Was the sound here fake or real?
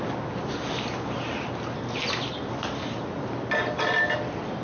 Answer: real